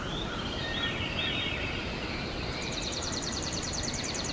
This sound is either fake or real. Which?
fake